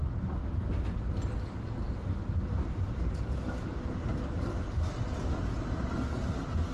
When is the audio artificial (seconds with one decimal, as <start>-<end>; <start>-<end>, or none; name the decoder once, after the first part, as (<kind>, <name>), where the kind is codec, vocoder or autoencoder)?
none